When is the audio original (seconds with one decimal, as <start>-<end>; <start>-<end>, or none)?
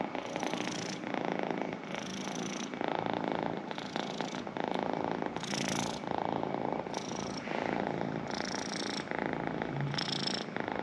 0.0-10.8